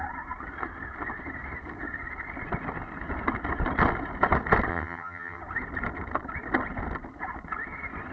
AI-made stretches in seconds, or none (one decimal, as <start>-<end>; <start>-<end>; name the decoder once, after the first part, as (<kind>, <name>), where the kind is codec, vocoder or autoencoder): 4.7-5.4 (vocoder, HiFi-GAN)